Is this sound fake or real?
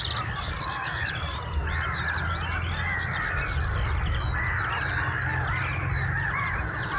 real